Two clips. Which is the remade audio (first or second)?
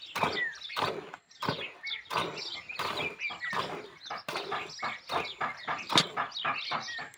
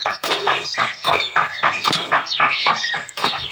second